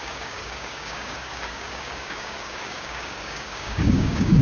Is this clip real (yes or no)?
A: no